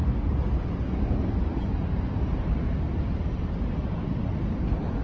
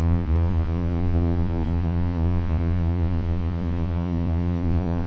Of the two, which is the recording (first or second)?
first